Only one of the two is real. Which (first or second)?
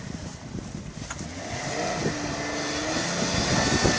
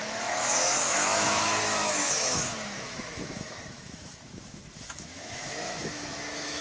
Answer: first